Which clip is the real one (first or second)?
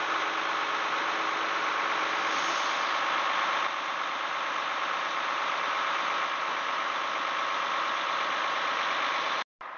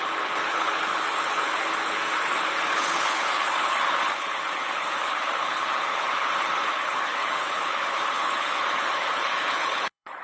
first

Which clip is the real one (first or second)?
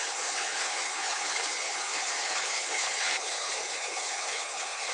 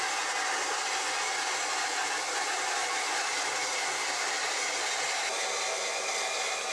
second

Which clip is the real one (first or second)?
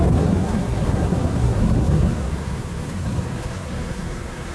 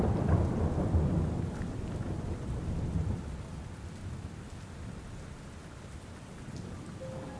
second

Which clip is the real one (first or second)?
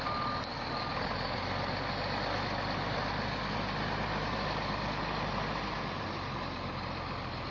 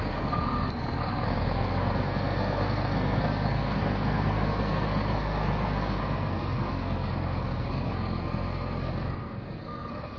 first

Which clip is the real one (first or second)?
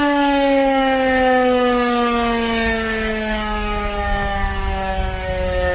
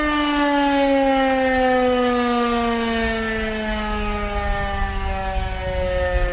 second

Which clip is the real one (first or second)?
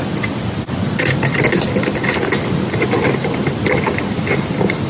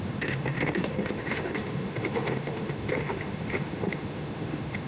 first